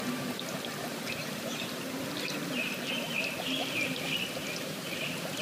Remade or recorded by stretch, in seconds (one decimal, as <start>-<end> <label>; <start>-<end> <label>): 0.0-3.6 recorded; 3.6-5.4 remade